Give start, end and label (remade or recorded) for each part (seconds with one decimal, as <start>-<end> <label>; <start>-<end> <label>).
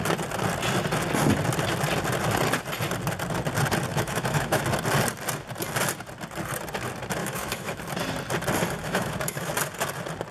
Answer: 0.0-3.9 recorded; 3.9-4.6 remade; 4.6-7.2 recorded; 7.2-7.8 remade; 7.8-8.8 recorded; 8.8-9.5 remade; 9.5-10.3 recorded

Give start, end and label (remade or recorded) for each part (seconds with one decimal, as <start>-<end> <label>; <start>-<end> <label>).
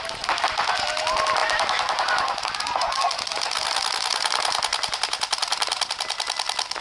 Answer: 0.0-1.4 recorded; 1.4-2.5 remade; 2.5-4.1 recorded; 4.1-5.9 remade; 5.9-6.8 recorded